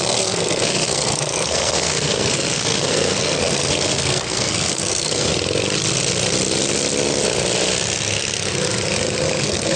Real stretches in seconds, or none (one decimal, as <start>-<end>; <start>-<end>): 5.3-9.4